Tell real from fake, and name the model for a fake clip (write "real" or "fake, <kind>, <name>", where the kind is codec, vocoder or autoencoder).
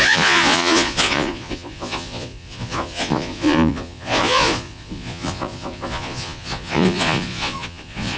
fake, vocoder, Vocos